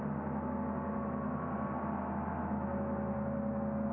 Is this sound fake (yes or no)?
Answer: no